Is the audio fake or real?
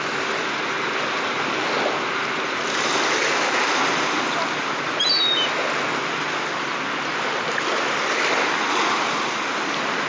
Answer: real